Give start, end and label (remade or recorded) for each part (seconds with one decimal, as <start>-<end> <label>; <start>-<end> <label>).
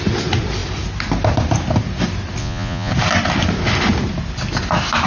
0.0-2.4 recorded; 2.4-2.9 remade; 2.9-5.1 recorded